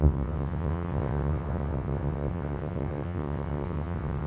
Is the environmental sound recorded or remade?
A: remade